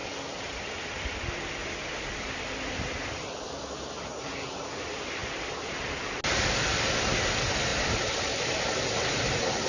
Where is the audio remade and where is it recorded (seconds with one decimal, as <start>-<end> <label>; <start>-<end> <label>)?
0.0-9.7 recorded